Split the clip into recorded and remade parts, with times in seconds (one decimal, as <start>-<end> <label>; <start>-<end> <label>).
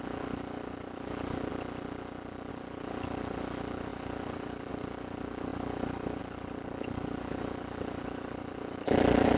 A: 0.0-1.5 remade; 1.5-2.5 recorded; 2.5-9.4 remade